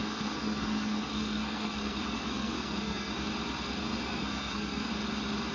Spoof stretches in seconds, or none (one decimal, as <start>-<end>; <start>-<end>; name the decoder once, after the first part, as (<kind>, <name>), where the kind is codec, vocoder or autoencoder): 0.0-3.3 (codec, SNAC); 3.8-4.9